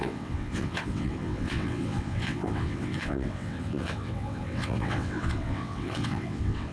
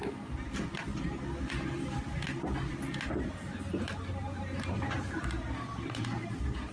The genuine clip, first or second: second